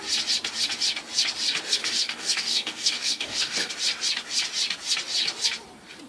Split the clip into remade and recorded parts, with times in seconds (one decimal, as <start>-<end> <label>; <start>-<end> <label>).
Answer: 0.0-1.8 recorded; 1.8-3.7 remade; 3.7-6.1 recorded